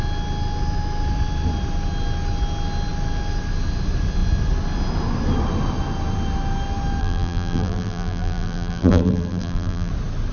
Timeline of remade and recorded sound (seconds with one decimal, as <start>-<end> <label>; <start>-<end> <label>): 0.0-7.0 recorded; 7.0-9.9 remade; 9.9-10.3 recorded